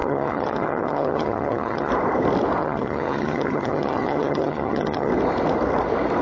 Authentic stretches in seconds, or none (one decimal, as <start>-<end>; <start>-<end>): 1.9-2.6; 5.1-6.2